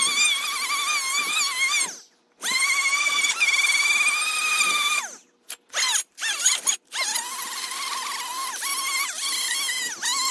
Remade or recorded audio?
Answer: recorded